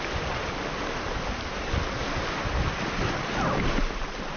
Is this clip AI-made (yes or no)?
no